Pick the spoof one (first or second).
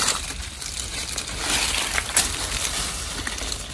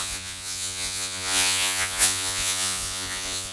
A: second